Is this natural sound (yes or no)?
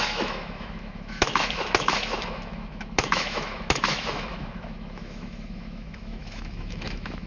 no